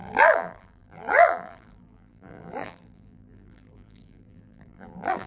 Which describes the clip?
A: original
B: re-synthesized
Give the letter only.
B